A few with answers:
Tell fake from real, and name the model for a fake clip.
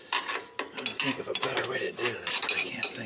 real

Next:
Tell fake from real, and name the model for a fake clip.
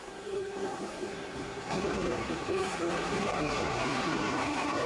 fake, codec, SNAC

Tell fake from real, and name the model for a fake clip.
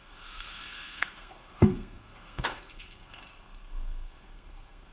fake, codec, SNAC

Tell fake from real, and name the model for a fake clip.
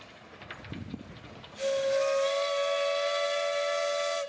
real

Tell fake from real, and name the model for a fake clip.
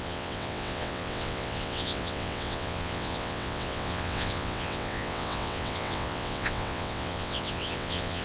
fake, vocoder, WaveNeXt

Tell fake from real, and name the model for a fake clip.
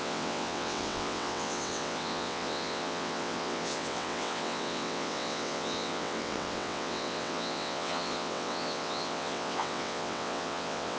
fake, vocoder, WaveNeXt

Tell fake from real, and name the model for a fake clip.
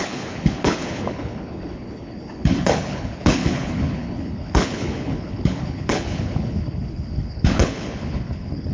fake, codec, HILCodec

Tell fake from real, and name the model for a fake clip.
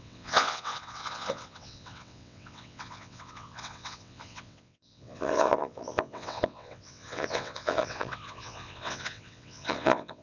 fake, vocoder, WaveNeXt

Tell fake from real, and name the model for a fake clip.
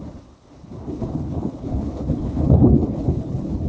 fake, codec, HILCodec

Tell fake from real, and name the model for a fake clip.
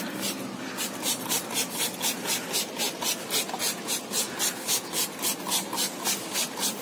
real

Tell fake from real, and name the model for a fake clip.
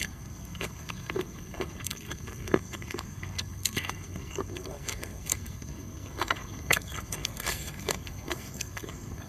fake, codec, SNAC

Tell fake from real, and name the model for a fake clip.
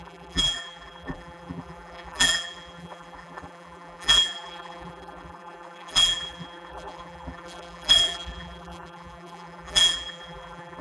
fake, vocoder, BigVGAN v2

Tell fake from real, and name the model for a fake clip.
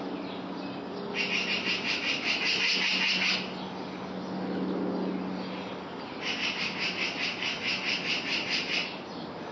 real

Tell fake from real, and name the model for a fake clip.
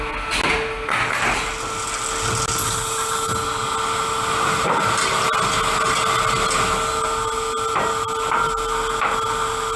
real